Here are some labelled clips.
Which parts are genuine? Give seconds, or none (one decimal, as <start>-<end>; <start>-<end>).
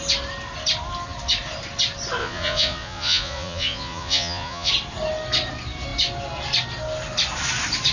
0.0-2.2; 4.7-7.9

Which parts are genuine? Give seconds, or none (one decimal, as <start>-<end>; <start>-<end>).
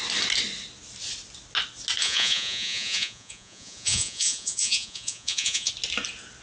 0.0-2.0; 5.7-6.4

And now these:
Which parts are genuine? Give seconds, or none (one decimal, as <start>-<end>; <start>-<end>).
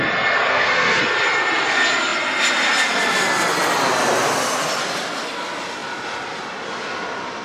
0.0-0.5; 1.0-7.4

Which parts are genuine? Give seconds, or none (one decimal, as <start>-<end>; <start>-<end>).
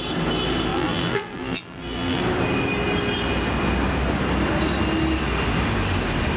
0.0-0.7; 2.2-6.4